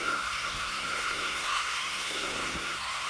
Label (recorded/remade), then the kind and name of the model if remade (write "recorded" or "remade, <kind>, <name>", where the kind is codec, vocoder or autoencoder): remade, codec, SNAC